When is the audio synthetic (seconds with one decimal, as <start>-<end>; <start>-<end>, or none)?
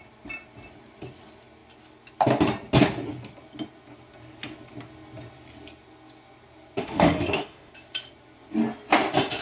6.8-7.7